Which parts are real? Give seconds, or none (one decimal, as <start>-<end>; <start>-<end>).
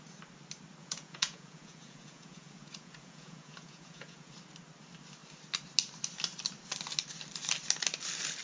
0.0-0.8; 4.3-8.4